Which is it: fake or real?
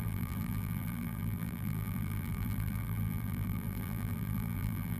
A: fake